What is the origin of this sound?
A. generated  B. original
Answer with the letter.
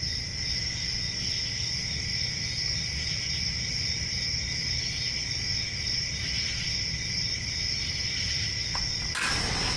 B